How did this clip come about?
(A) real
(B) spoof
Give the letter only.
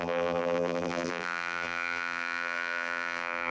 B